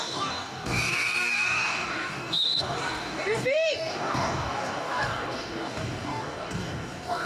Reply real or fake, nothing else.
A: fake